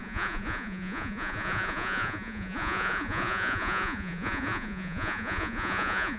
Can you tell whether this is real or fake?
fake